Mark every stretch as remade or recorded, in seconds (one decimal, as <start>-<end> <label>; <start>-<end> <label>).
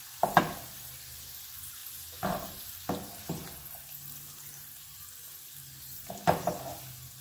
0.0-7.2 recorded